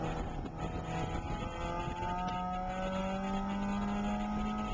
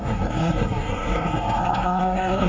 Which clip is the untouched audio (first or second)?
first